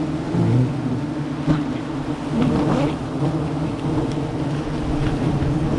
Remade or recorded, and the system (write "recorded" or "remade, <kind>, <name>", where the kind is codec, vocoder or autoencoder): recorded